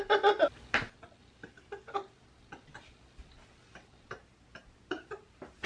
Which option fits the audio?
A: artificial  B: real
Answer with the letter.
B